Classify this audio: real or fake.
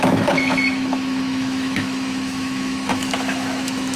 fake